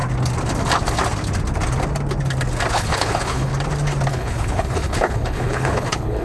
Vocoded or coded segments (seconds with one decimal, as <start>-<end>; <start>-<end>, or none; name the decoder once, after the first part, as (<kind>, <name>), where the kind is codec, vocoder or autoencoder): 2.7-3.5 (codec, HILCodec); 4.1-6.2